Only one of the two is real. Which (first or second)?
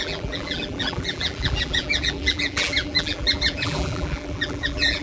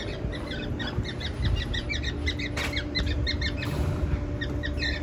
second